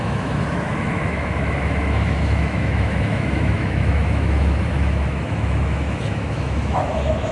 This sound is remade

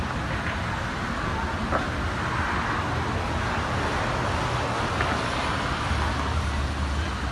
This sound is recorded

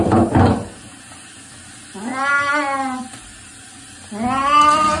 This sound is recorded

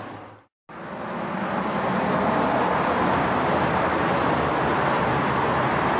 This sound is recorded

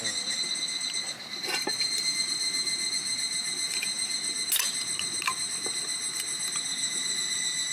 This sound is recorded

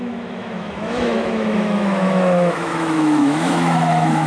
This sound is remade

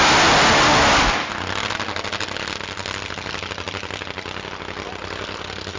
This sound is recorded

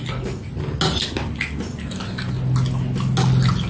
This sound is recorded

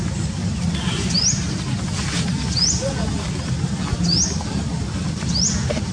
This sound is recorded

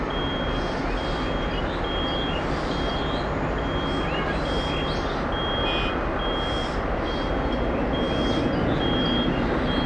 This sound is recorded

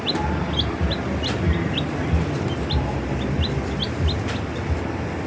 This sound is recorded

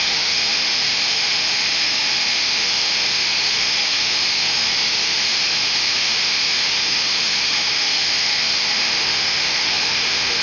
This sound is remade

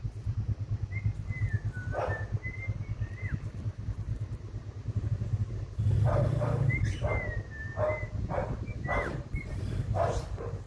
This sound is recorded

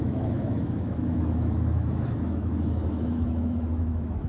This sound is remade